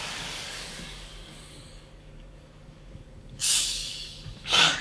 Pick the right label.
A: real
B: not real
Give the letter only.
B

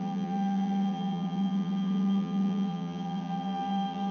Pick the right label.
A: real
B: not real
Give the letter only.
B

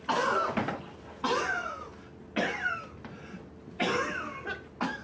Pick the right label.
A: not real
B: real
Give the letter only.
B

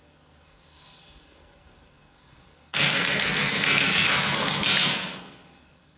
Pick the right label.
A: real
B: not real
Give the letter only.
B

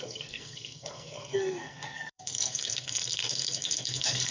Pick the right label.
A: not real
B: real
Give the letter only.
A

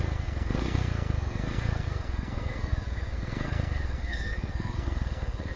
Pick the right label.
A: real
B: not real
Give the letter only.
B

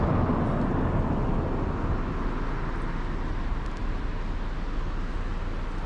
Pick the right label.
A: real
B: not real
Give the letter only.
A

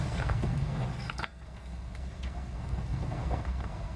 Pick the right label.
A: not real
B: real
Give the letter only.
A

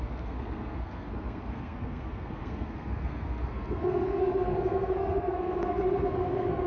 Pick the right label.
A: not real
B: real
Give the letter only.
A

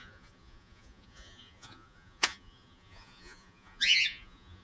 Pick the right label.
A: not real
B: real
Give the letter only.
A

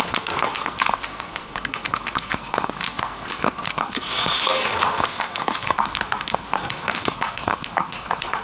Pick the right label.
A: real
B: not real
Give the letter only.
B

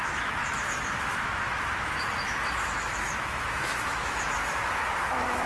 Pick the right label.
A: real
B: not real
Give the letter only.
B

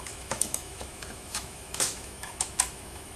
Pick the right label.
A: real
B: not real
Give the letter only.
B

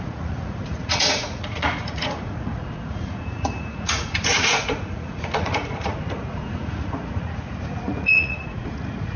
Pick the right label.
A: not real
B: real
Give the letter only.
A